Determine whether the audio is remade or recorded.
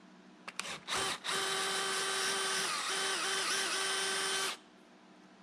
recorded